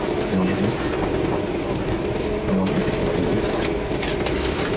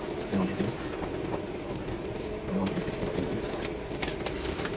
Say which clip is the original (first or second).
first